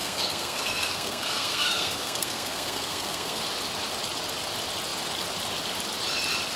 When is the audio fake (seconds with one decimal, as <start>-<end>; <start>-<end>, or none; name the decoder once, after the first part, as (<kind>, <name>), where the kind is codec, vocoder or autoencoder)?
0.0-3.4 (codec, SNAC)